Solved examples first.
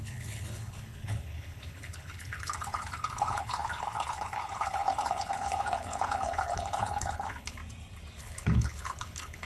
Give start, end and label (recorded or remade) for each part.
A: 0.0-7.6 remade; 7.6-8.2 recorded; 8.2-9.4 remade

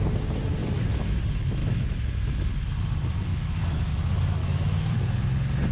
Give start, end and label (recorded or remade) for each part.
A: 0.0-0.6 recorded; 0.6-1.2 remade; 1.2-1.6 recorded; 1.6-2.3 remade; 2.3-3.3 recorded; 3.3-3.9 remade; 3.9-4.4 recorded; 4.4-5.0 remade; 5.0-5.7 recorded

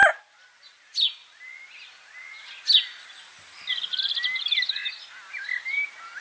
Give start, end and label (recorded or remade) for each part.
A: 0.0-6.2 recorded